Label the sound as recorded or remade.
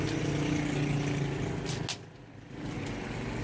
recorded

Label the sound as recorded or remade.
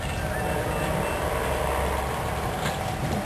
recorded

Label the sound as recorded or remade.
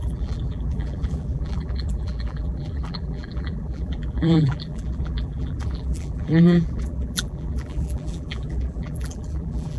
remade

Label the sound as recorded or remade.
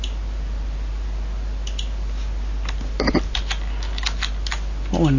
recorded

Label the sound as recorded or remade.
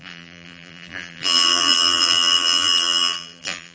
remade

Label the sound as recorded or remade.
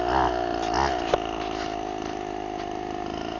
recorded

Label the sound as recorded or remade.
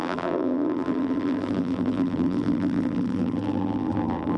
remade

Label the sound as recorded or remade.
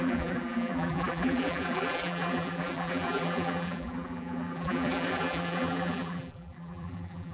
remade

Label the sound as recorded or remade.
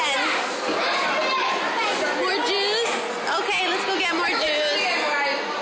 recorded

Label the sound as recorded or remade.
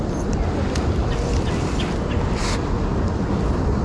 recorded